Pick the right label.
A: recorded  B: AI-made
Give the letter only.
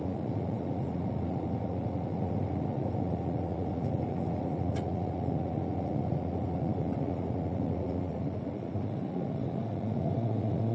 B